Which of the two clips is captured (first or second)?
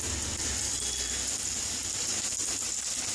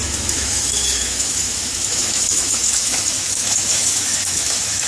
first